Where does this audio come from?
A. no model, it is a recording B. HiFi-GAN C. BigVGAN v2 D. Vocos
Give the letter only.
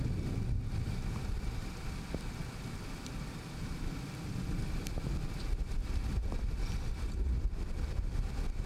C